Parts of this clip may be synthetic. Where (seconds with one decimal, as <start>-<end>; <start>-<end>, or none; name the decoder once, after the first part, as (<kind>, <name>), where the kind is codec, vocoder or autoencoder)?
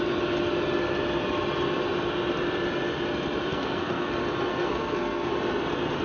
3.5-4.1 (codec, SNAC); 4.5-5.3